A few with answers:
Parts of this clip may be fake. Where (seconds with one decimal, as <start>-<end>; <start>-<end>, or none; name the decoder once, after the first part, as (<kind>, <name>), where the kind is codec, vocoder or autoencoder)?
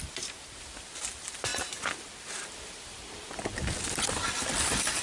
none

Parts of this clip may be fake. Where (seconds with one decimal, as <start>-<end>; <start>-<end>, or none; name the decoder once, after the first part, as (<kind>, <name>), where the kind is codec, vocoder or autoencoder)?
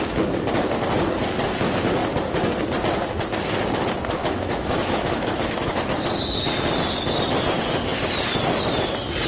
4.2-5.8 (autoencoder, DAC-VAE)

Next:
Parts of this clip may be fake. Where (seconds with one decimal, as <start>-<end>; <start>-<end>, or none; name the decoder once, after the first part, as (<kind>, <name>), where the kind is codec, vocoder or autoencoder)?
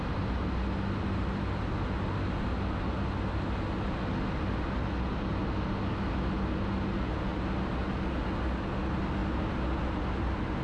none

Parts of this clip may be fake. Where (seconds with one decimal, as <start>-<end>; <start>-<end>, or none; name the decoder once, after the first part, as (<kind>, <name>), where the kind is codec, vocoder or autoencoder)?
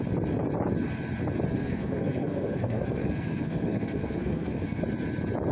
1.5-4.8 (codec, SNAC)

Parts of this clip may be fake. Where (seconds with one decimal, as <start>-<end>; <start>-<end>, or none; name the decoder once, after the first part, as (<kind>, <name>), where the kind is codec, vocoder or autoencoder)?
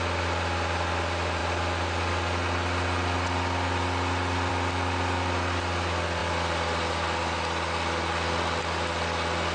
none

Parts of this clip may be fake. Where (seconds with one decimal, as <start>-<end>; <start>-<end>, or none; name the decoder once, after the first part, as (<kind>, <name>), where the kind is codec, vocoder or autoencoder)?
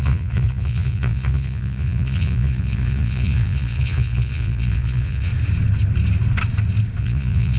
0.0-5.3 (vocoder, Vocos); 7.0-7.6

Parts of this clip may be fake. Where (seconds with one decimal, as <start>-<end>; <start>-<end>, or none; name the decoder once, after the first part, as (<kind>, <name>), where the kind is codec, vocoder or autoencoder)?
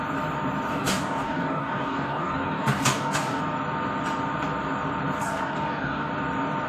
0.7-3.4 (codec, DAC); 5.2-6.1